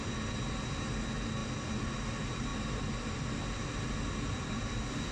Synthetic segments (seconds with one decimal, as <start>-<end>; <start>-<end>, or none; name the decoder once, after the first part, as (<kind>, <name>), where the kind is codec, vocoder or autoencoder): none